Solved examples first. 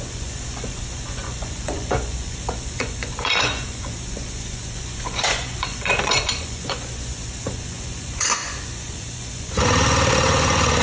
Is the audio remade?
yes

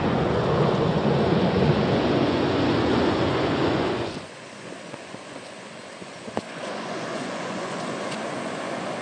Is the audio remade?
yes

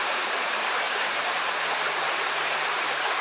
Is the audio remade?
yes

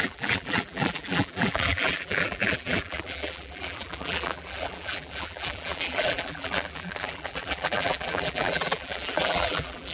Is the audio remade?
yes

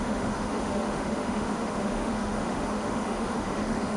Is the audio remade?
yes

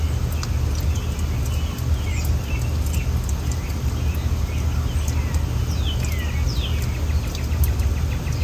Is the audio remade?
no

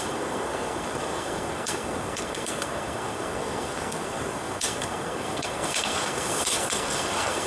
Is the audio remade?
yes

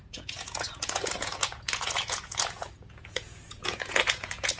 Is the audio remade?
yes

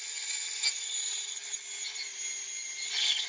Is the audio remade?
no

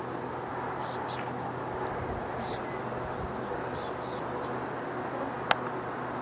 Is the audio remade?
no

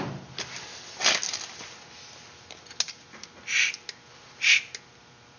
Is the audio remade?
no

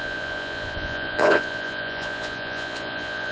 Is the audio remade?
yes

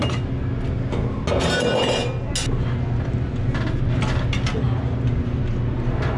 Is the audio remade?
no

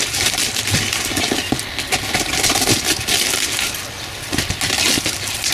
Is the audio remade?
no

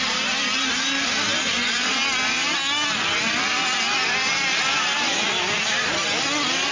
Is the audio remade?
no